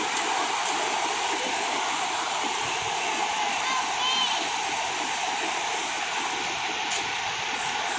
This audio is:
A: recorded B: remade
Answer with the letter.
B